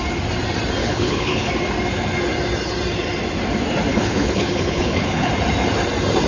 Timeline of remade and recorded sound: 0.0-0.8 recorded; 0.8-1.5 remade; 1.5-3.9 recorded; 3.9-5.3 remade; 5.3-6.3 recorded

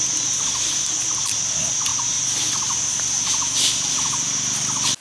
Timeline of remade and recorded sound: 0.0-5.0 recorded

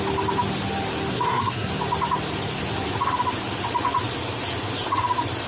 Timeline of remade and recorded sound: 0.0-1.1 recorded; 1.1-1.7 remade; 1.7-5.5 recorded

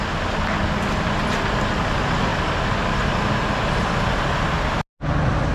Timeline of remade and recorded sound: 0.0-5.5 recorded

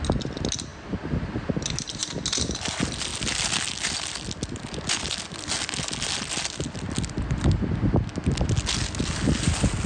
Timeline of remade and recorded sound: 0.0-9.9 recorded

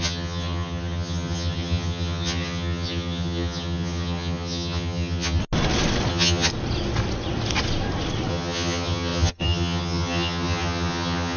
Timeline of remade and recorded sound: 0.0-5.4 remade; 5.4-6.1 recorded; 6.1-6.5 remade; 6.5-8.3 recorded; 8.3-11.4 remade

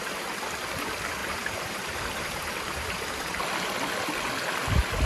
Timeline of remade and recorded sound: 0.0-1.2 recorded; 1.2-3.4 remade; 3.4-5.1 recorded

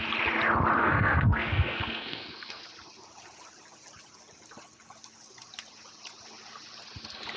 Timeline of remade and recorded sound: 0.0-0.8 recorded; 0.8-2.6 remade; 2.6-7.4 recorded